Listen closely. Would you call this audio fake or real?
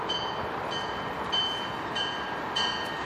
real